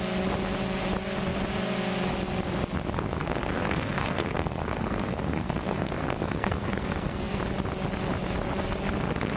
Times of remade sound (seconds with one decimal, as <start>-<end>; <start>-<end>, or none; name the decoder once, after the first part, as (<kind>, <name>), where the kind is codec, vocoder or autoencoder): 3.2-7.4 (codec, SNAC)